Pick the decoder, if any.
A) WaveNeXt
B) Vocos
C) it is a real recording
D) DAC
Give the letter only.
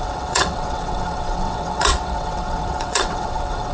A